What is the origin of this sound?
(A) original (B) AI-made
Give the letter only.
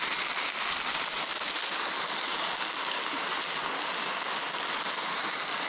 A